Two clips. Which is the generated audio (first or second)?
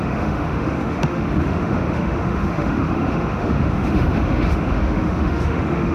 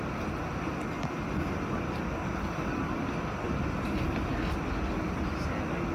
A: first